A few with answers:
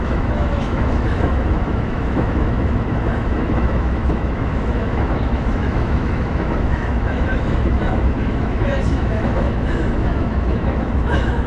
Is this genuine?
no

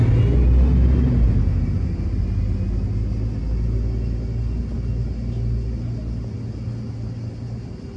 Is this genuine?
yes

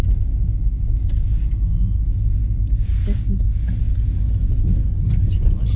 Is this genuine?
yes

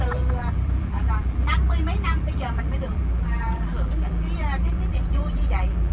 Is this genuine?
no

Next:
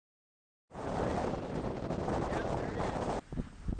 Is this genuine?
yes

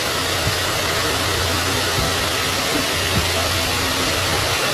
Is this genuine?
yes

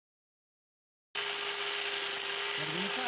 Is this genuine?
yes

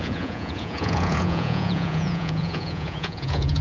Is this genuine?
no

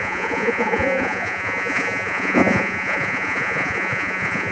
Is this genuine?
no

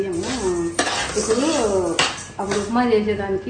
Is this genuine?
yes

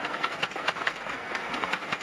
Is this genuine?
no